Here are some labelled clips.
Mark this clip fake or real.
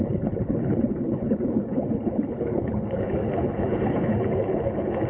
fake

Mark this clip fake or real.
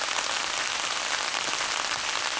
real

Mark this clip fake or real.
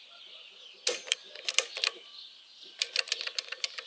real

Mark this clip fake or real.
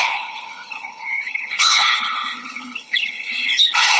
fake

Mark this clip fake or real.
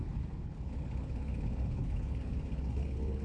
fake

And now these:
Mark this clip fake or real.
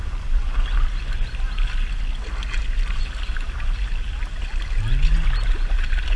real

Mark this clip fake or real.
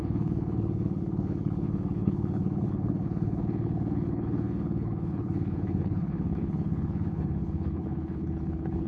fake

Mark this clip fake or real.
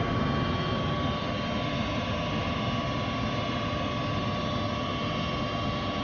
real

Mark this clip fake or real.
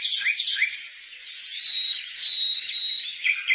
real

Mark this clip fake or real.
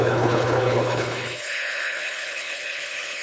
fake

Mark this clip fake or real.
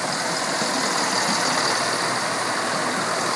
real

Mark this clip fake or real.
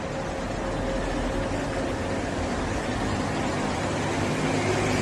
real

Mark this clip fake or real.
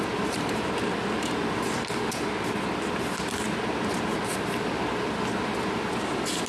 real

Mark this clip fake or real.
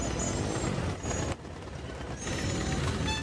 real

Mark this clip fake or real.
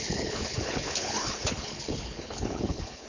fake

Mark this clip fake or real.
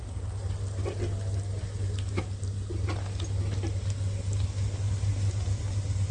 real